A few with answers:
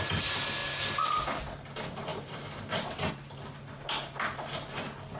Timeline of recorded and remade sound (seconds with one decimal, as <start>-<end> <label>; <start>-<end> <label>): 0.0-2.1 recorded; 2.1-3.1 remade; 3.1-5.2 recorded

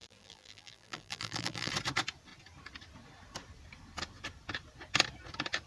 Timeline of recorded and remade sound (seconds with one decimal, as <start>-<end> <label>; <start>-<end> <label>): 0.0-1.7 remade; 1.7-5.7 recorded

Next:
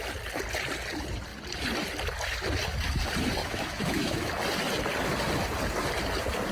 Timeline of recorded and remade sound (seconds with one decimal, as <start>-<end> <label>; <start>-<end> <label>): 0.0-3.4 recorded; 3.4-4.3 remade; 4.3-6.5 recorded